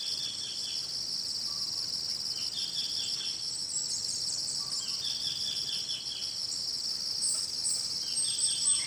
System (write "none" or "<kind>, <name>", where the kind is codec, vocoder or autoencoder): none